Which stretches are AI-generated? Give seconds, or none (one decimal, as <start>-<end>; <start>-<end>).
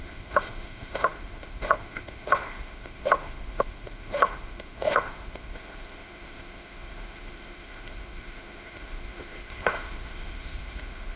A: 0.0-11.2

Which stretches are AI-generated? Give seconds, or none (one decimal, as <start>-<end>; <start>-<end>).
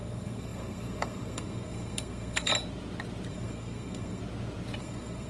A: 0.0-2.5; 3.3-4.2; 4.8-5.3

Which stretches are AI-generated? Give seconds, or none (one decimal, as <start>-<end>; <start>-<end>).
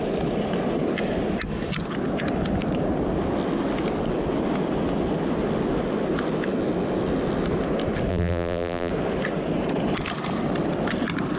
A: 8.1-8.9